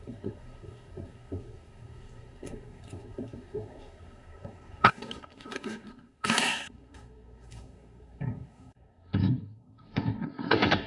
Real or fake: fake